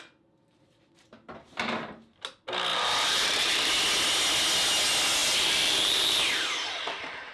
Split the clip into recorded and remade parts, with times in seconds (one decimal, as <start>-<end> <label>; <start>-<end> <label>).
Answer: 0.0-2.7 recorded; 2.7-3.7 remade; 3.7-5.2 recorded; 5.2-7.3 remade